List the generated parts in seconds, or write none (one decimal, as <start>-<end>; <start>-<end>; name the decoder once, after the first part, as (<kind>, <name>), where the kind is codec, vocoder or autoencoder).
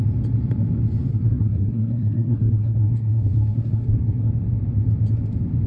1.1-4.3 (codec, SNAC)